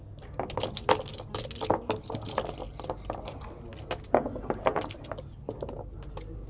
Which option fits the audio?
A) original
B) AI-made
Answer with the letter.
A